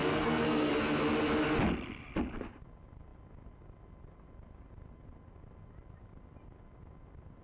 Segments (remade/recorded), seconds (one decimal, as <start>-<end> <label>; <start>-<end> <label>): 0.0-0.7 remade; 0.7-7.4 recorded